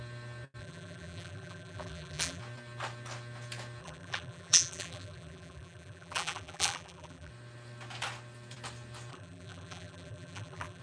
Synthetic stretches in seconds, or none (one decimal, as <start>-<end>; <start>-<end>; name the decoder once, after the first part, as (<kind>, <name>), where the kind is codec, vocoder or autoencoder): 0.6-2.4 (vocoder, BigVGAN v2); 3.8-7.3; 9.1-10.8